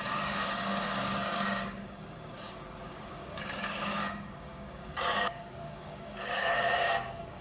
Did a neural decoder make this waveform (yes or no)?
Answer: yes